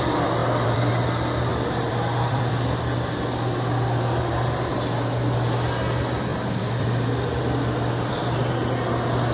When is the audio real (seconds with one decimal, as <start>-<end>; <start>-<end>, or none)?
0.0-0.4; 0.9-1.5; 2.5-6.3; 8.5-9.3